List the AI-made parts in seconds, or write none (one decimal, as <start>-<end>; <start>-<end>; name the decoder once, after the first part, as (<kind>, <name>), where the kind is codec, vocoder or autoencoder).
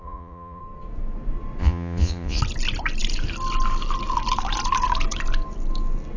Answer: 0.0-0.6 (vocoder, Vocos); 1.6-2.4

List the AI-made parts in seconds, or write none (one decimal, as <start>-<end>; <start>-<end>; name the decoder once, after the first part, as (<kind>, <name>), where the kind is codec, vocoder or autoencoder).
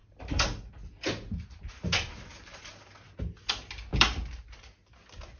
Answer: 0.0-0.7 (vocoder, BigVGAN v2); 3.9-4.5